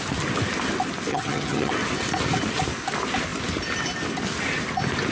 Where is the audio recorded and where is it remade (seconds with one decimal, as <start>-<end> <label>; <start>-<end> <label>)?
0.0-1.1 recorded; 1.1-1.7 remade; 1.7-5.1 recorded